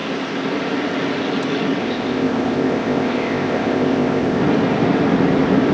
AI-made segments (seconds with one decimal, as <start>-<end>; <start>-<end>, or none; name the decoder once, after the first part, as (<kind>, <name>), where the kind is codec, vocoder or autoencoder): 1.8-4.4 (codec, ZipCodec)